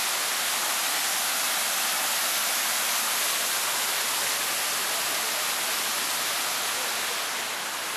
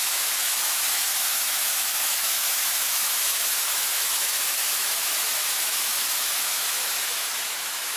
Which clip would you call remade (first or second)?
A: second